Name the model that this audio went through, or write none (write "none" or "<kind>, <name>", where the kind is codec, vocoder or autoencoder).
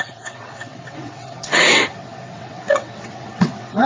vocoder, WaveNeXt